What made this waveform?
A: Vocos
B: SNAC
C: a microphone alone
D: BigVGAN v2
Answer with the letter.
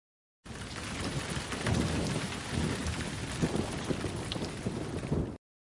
D